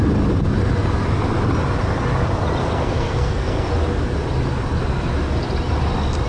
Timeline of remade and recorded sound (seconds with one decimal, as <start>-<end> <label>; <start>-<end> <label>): 0.0-2.6 recorded; 2.6-3.7 remade; 3.7-6.3 recorded